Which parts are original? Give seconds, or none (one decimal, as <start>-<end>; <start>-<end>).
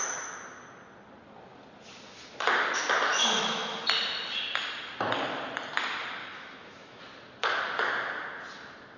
0.0-3.1; 3.8-6.2; 7.0-9.0